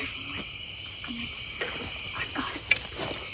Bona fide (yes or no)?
yes